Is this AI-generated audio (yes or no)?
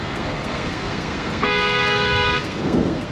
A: yes